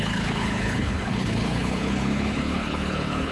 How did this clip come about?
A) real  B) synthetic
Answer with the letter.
B